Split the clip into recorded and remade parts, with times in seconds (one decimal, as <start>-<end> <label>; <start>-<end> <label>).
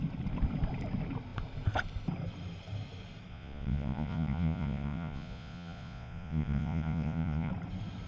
0.0-3.3 recorded; 3.3-7.5 remade; 7.5-8.1 recorded